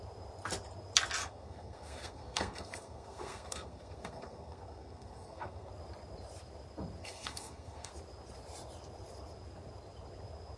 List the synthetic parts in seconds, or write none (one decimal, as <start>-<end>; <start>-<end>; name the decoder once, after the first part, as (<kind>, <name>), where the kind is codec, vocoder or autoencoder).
1.2-5.7 (codec, SNAC); 7.0-7.9